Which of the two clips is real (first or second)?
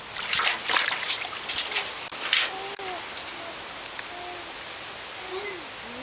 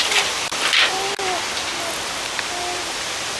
first